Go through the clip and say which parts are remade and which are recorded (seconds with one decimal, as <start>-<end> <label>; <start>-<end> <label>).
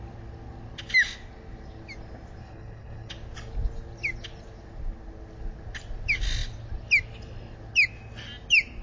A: 0.0-2.4 recorded; 2.4-3.1 remade; 3.1-8.8 recorded